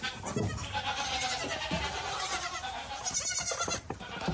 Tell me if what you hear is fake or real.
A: fake